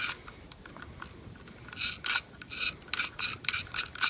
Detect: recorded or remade recorded